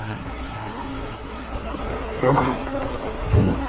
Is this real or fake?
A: fake